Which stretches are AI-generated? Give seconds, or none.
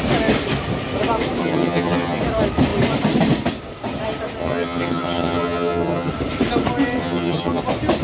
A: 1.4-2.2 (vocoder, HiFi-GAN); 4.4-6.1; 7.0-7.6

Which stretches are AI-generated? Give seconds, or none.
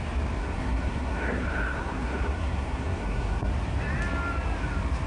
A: 0.4-3.5 (codec, SNAC)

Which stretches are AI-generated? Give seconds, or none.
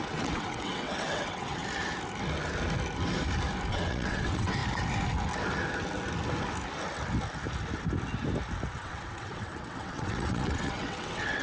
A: 0.0-1.6 (vocoder, WaveNeXt); 3.7-4.6; 8.7-11.4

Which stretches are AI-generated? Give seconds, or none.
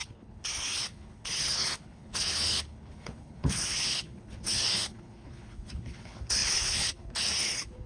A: 0.0-7.9 (codec, HILCodec)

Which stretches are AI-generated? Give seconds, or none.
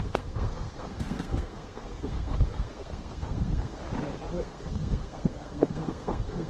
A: 0.0-3.8 (codec, SNAC); 4.4-6.5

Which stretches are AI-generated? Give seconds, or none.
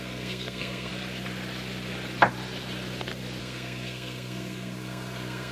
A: 0.0-0.9 (codec, SNAC); 3.4-5.5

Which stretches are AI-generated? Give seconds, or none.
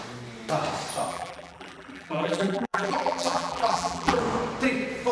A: 1.1-4.2 (vocoder, BigVGAN v2)